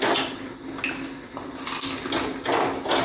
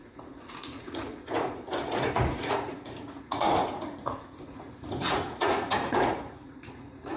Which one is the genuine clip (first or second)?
first